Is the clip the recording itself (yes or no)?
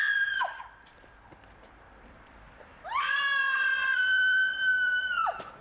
no